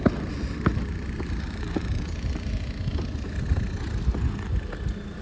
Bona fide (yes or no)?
yes